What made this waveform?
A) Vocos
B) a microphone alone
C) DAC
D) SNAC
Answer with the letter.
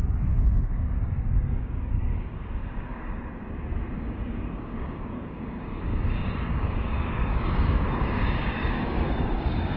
C